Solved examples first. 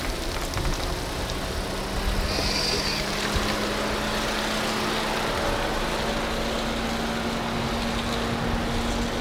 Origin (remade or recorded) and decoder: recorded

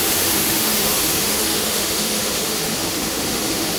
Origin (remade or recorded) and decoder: remade, autoencoder, DAC-VAE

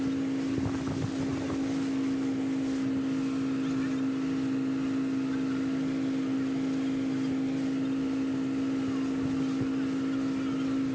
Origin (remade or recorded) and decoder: recorded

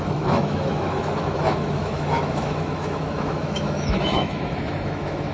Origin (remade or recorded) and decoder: remade, autoencoder, DAC-VAE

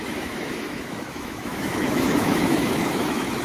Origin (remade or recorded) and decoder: remade, autoencoder, DAC-VAE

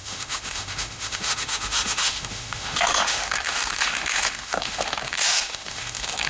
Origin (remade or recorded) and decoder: remade, autoencoder, DAC-VAE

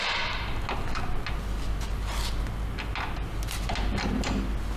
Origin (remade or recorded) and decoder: recorded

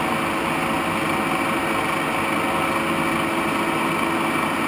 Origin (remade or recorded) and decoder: recorded